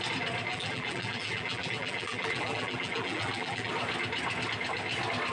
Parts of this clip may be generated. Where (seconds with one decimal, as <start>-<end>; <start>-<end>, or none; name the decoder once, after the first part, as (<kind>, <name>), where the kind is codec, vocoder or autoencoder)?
0.5-3.7 (vocoder, BigVGAN v2)